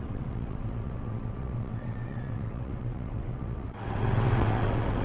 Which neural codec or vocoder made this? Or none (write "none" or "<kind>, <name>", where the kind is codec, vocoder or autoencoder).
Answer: vocoder, WaveNeXt